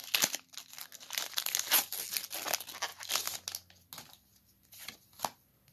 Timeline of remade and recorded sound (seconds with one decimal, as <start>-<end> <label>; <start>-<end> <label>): 0.0-5.7 recorded